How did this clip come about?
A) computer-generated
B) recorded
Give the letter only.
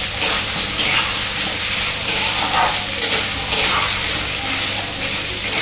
B